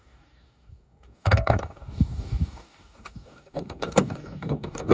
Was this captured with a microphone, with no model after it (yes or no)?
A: no